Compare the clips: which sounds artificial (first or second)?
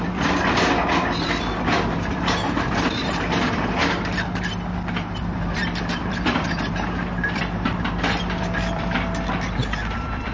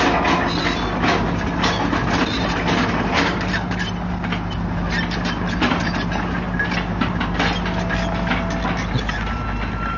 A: first